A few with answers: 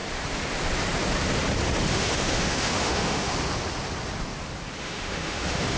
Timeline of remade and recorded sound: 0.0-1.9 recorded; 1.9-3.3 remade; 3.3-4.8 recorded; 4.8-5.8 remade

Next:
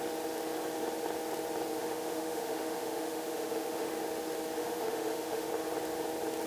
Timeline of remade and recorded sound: 0.0-1.7 recorded; 1.7-3.9 remade; 3.9-4.6 recorded; 4.6-5.5 remade; 5.5-6.5 recorded

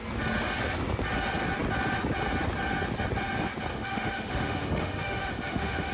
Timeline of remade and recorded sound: 0.0-3.7 recorded; 3.7-5.9 remade

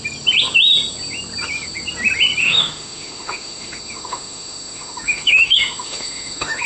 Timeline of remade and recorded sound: 0.0-2.4 recorded; 2.4-6.7 remade

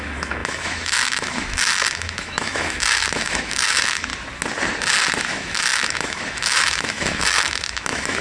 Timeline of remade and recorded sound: 0.0-4.1 remade; 4.1-5.2 recorded; 5.2-8.2 remade

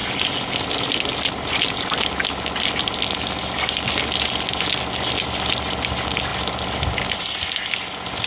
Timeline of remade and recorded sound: 0.0-8.3 recorded

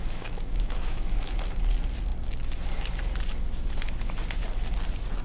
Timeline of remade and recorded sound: 0.0-1.3 remade; 1.3-5.2 recorded

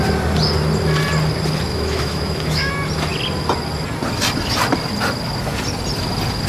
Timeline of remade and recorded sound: 0.0-1.7 recorded; 1.7-2.7 remade; 2.7-6.5 recorded